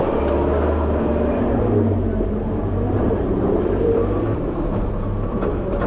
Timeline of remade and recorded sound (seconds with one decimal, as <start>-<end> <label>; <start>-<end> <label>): 0.0-1.3 recorded; 1.3-4.2 remade; 4.2-5.9 recorded